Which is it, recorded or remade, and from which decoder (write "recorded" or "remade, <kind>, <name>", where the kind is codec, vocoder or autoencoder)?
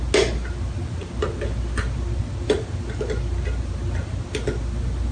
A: recorded